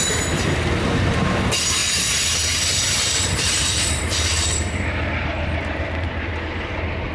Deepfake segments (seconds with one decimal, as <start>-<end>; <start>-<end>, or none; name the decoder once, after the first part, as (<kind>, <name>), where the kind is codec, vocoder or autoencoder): 1.8-6.1 (vocoder, BigVGAN v2)